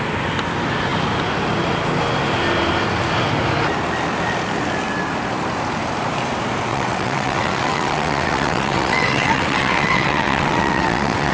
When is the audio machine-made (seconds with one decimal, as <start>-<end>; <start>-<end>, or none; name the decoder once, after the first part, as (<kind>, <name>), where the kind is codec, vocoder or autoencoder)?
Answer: 6.7-11.3 (vocoder, WaveNeXt)